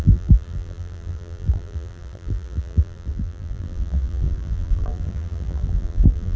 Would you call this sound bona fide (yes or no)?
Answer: no